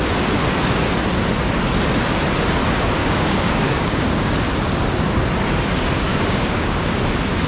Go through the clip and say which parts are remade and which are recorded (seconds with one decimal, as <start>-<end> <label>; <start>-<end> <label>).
0.0-3.0 recorded; 3.0-4.3 remade; 4.3-6.1 recorded; 6.1-7.0 remade; 7.0-7.5 recorded